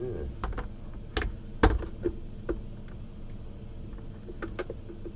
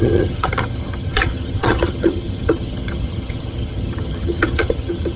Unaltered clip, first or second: first